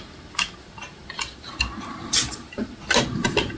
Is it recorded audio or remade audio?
recorded